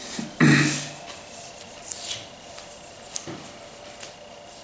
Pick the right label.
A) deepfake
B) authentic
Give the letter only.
B